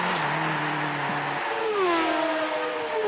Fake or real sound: real